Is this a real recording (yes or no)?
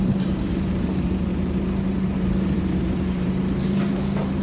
no